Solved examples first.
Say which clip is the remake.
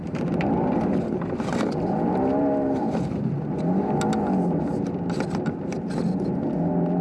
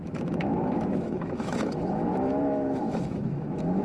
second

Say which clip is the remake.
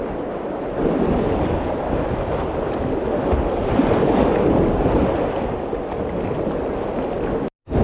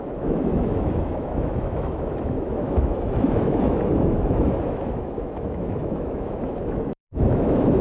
second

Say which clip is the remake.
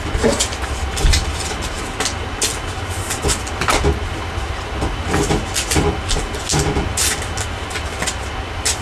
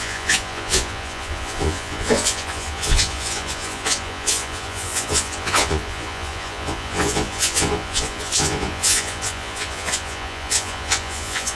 second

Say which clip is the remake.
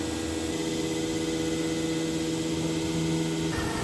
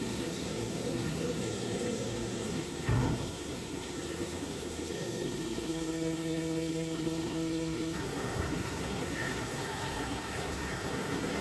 second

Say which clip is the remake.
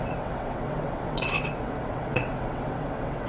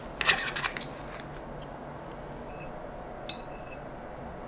first